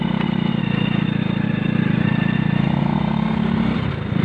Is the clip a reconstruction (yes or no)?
no